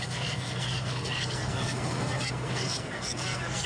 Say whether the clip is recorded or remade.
remade